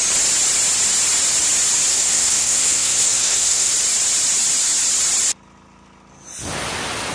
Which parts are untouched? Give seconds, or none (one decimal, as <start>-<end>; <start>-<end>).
0.0-1.9; 3.7-7.1